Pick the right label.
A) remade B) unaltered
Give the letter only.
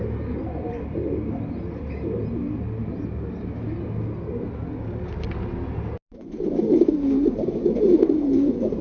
B